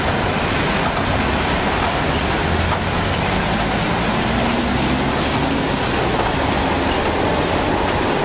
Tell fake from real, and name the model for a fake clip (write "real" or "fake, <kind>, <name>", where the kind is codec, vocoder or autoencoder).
real